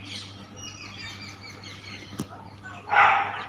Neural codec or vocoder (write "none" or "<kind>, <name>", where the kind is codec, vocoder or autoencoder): none